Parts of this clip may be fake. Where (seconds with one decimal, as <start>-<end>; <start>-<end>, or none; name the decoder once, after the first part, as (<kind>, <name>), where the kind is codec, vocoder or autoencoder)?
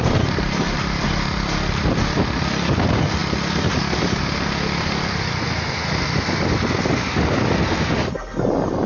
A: none